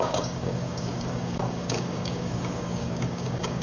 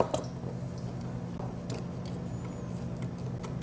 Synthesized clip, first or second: first